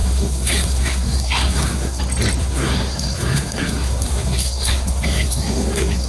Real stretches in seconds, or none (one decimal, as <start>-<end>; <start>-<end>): 2.0-2.4